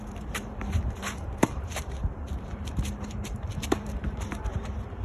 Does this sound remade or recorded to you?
remade